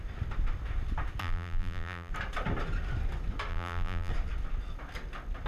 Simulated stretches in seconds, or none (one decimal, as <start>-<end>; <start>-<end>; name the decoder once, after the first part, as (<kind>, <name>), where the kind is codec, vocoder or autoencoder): 1.2-2.1 (vocoder, BigVGAN v2); 3.5-4.1